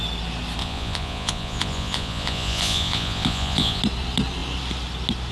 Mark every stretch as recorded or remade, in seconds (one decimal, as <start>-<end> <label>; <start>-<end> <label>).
0.0-0.6 recorded; 0.6-3.8 remade; 3.8-5.3 recorded